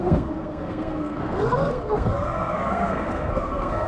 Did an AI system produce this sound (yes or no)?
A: yes